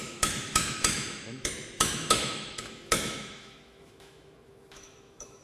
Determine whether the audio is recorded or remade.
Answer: remade